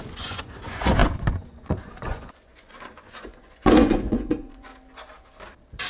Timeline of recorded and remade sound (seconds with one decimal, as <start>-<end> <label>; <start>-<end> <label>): 0.0-4.7 remade; 4.7-5.9 recorded

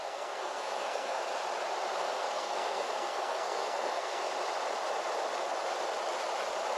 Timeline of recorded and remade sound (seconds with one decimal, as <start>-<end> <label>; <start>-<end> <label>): 0.0-1.2 remade; 1.2-2.0 recorded; 2.0-4.3 remade; 4.3-6.8 recorded